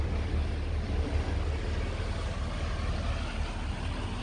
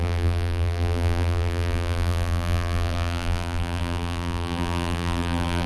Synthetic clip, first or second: second